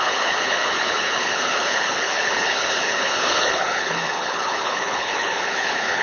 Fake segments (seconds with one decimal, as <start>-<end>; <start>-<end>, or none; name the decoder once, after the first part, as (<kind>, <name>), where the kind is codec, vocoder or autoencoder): 0.0-6.0 (codec, HILCodec)